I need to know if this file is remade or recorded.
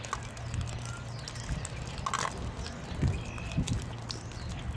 recorded